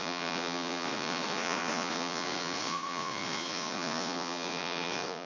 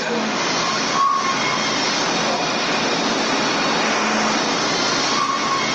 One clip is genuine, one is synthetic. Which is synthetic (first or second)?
first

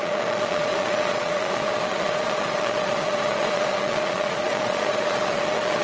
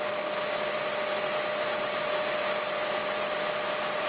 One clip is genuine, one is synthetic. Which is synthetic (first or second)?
first